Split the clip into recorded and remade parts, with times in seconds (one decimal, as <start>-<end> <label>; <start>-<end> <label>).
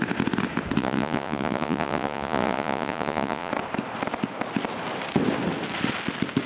0.0-0.8 recorded; 0.8-3.5 remade; 3.5-6.5 recorded